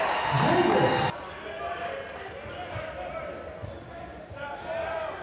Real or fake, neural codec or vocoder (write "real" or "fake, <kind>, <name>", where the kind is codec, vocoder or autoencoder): real